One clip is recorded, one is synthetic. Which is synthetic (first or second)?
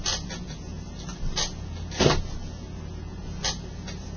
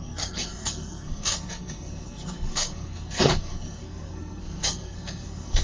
second